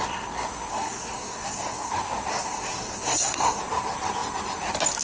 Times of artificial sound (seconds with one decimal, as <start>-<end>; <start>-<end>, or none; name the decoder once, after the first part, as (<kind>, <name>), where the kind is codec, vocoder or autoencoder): 0.7-1.9 (codec, SNAC); 2.3-3.6